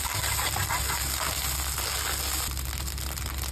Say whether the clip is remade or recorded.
recorded